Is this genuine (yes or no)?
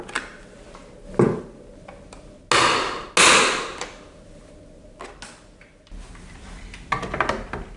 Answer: yes